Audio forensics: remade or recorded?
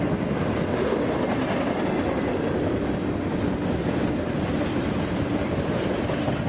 recorded